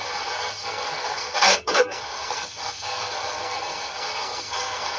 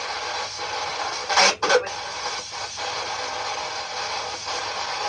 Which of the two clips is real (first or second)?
second